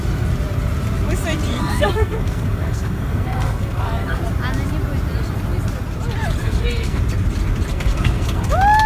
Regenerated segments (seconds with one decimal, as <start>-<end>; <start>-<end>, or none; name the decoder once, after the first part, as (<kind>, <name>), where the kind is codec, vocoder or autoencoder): 1.5-4.2 (codec, SNAC); 6.4-7.0; 7.7-8.5